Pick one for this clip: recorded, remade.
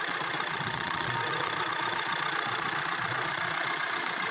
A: remade